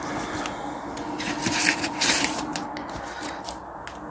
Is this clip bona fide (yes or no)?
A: yes